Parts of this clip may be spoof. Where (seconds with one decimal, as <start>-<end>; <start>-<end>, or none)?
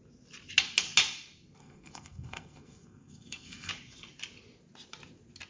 1.6-3.7